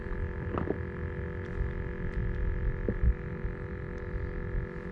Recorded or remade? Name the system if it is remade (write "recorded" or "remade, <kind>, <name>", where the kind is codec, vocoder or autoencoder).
recorded